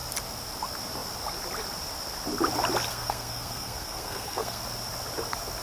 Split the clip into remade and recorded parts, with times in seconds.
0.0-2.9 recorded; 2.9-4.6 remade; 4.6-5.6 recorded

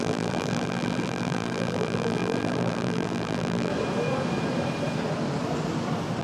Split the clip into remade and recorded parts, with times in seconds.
0.0-3.7 remade; 3.7-6.2 recorded

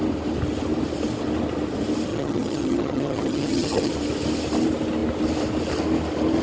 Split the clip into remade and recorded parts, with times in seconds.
0.0-2.1 recorded; 2.1-3.9 remade; 3.9-6.4 recorded